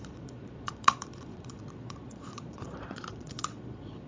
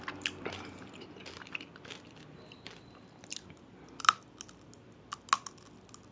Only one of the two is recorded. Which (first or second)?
second